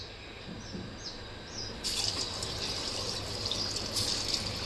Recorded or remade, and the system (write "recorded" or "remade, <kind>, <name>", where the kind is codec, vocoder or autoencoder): recorded